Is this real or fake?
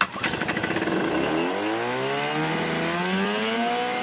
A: real